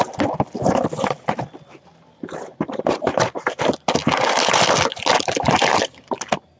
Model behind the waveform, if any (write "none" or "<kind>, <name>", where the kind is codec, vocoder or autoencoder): none